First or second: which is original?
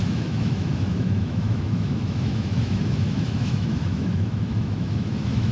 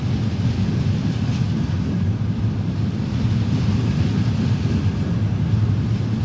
second